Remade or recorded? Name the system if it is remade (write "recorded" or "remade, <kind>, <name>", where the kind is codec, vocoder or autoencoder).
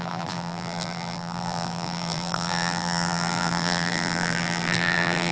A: remade, vocoder, BigVGAN v2